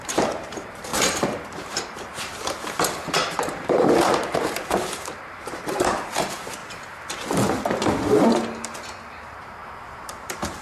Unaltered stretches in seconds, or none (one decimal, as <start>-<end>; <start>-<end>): 6.6-9.2